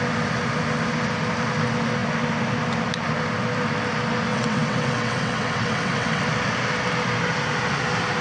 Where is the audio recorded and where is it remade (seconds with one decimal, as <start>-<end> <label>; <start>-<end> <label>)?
0.0-4.3 recorded; 4.3-6.2 remade; 6.2-8.2 recorded